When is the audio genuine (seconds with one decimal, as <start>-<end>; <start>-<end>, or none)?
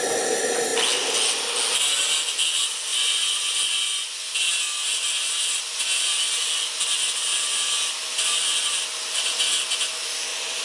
0.0-2.9; 4.3-10.6